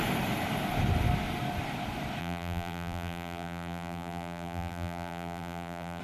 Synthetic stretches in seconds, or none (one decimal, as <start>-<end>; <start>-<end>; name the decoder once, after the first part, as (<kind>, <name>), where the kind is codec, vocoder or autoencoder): 2.2-6.0 (vocoder, BigVGAN v2)